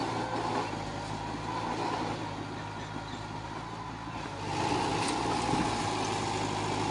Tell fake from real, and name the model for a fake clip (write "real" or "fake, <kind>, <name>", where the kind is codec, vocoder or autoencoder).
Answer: real